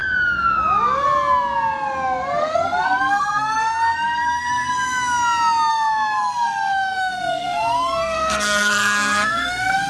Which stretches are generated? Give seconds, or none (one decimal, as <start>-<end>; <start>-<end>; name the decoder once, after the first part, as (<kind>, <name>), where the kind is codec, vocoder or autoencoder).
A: 2.4-4.7 (codec, SNAC); 5.7-9.9